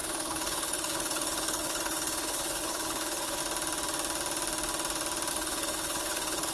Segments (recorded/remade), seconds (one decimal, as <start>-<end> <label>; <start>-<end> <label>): 0.0-3.4 remade; 3.4-5.3 recorded; 5.3-6.5 remade